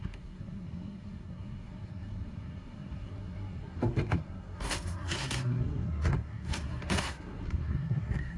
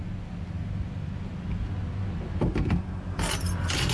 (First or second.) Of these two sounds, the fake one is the first